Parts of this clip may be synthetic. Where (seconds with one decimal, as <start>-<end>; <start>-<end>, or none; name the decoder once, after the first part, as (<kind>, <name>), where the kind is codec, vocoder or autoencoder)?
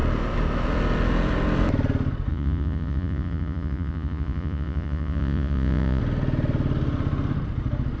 2.3-6.0 (vocoder, Vocos)